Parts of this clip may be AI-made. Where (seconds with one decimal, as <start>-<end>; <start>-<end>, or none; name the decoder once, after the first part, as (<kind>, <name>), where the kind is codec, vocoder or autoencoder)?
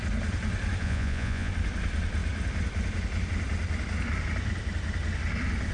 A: 0.8-1.5 (vocoder, Vocos)